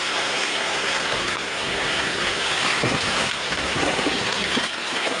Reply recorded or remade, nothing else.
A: remade